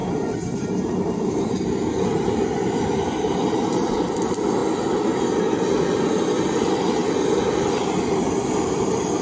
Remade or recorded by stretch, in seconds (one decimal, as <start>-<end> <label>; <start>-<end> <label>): 0.0-1.5 remade; 1.5-9.2 recorded